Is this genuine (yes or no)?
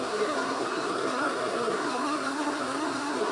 no